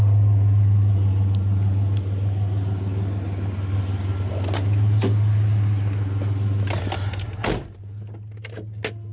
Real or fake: real